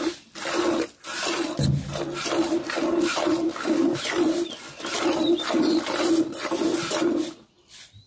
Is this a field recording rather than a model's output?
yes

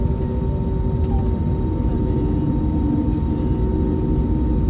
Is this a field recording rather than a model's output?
yes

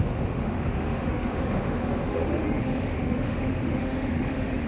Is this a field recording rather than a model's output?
no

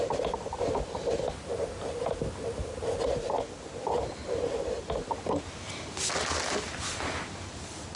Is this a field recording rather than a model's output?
yes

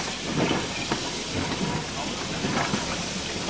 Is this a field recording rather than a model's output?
yes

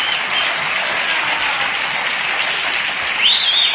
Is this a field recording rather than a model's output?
yes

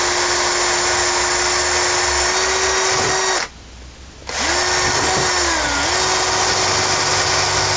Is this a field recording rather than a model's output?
yes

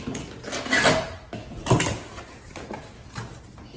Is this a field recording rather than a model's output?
yes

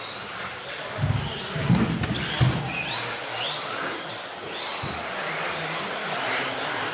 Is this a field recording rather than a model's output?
yes